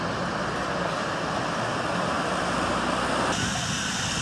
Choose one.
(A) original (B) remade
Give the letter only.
A